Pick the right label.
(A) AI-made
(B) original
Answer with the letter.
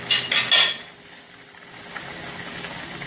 B